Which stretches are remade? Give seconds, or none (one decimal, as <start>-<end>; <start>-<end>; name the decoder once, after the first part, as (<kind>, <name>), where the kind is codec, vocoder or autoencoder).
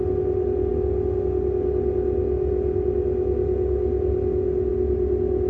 none